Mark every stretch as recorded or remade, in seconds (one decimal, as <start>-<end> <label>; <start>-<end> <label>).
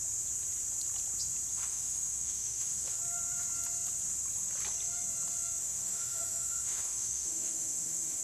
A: 0.0-1.5 recorded; 1.5-3.0 remade; 3.0-5.6 recorded; 5.6-8.2 remade